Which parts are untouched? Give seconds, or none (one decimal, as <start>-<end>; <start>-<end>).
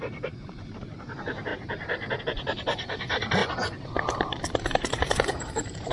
1.5-2.2; 3.4-4.2